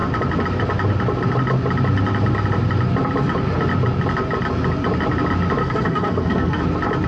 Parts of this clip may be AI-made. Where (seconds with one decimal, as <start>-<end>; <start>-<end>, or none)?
5.6-6.6

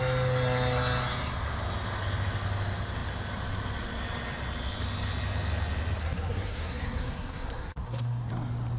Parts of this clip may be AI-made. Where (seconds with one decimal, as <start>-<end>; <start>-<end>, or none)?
6.0-8.3